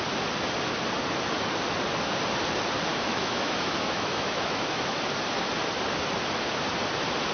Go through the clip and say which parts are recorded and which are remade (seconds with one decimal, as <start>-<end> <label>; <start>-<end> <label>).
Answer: 0.0-2.9 recorded; 2.9-5.0 remade; 5.0-7.3 recorded